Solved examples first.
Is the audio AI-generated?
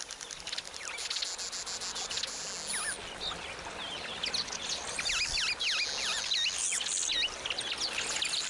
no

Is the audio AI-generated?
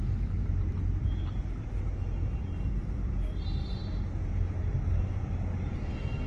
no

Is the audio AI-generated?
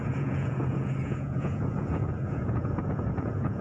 yes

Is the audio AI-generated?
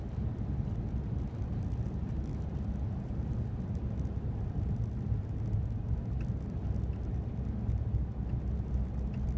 no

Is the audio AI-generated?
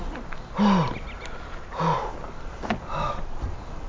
no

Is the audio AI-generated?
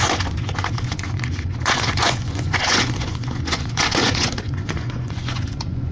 yes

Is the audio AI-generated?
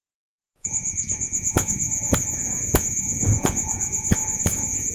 yes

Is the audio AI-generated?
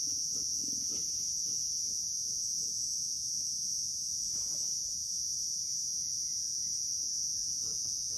yes